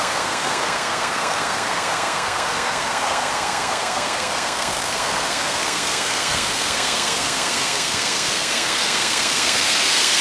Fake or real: fake